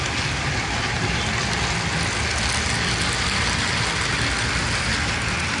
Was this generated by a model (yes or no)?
no